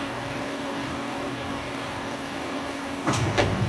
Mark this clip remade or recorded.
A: remade